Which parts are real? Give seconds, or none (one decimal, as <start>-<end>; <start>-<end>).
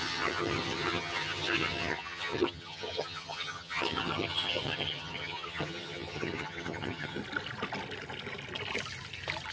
7.2-9.5